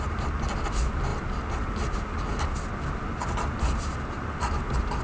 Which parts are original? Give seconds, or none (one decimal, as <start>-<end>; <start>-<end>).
0.0-5.0